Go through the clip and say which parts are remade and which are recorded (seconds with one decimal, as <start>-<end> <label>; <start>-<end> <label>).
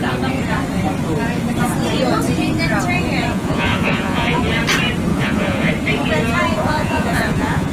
0.0-3.3 recorded; 3.3-4.4 remade; 4.4-5.1 recorded; 5.1-5.7 remade; 5.7-6.5 recorded; 6.5-7.7 remade